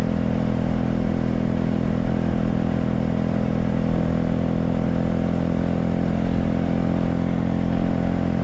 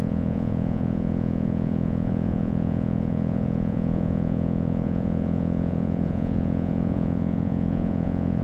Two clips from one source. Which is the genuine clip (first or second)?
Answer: first